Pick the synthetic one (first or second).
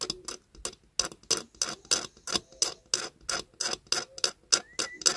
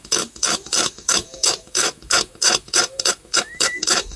second